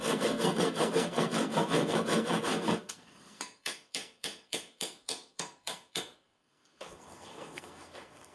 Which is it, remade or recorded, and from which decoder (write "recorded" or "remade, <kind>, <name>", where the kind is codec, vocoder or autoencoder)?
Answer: remade, codec, SNAC